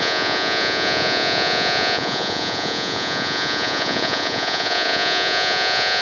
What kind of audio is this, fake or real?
fake